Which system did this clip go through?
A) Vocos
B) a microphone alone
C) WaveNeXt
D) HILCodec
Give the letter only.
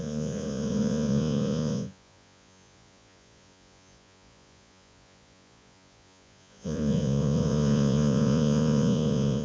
A